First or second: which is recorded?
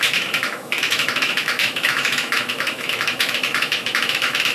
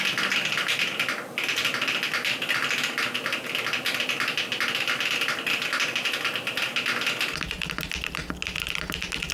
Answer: second